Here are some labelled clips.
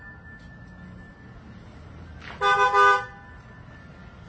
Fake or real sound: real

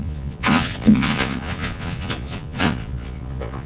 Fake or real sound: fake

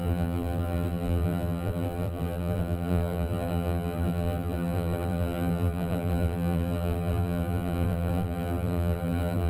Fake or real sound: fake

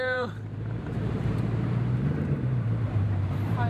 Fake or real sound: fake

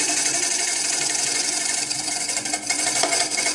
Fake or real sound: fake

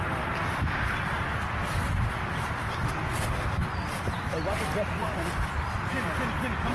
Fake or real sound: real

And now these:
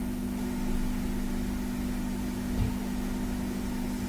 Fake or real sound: real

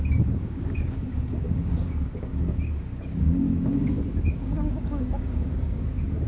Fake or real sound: fake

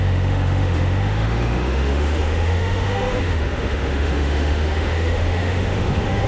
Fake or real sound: fake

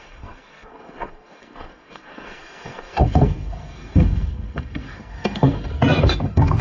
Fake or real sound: fake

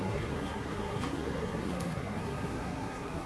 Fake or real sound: fake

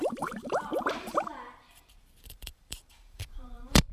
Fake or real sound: fake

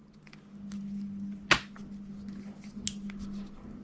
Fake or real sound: real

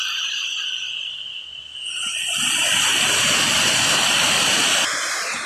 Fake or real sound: real